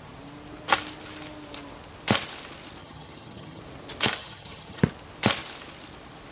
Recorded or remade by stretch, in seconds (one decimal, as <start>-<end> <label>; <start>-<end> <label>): 0.0-2.8 recorded; 2.8-3.6 remade; 3.6-4.2 recorded; 4.2-4.8 remade; 4.8-6.3 recorded